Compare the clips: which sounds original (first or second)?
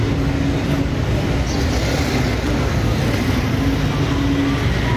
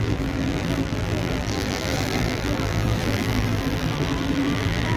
first